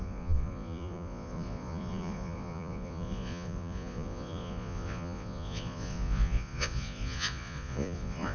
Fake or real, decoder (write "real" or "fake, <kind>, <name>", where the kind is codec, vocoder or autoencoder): fake, vocoder, Vocos